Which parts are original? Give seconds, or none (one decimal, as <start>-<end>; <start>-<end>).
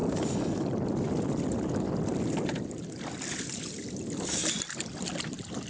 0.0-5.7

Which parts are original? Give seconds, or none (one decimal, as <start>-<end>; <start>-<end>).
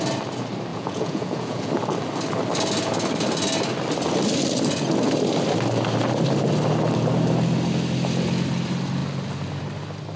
0.0-0.7; 1.7-10.2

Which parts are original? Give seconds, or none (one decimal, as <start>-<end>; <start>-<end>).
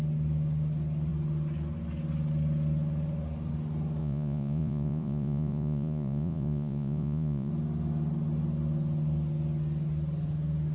0.0-4.0; 7.5-10.7